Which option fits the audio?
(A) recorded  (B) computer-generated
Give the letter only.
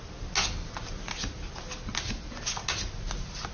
A